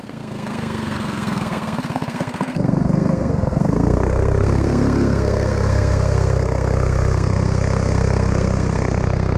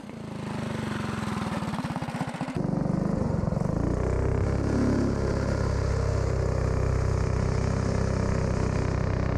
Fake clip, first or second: first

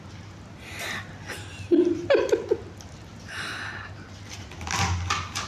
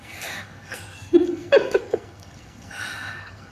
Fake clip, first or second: second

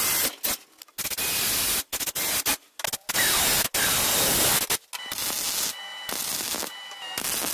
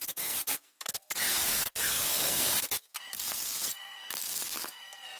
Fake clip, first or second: second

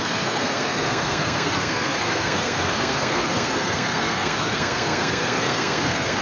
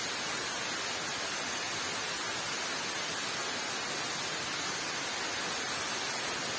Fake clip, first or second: first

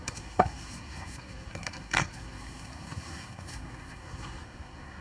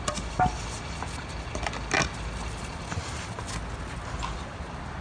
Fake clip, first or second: first